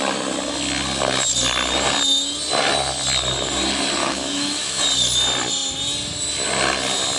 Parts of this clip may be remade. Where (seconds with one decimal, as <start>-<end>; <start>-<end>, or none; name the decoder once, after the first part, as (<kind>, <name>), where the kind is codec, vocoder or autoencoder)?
4.0-4.8 (autoencoder, DAC-VAE)